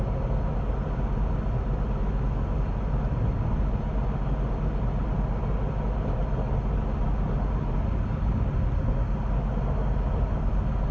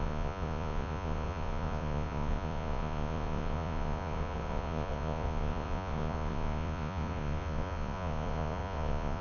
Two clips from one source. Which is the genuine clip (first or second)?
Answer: first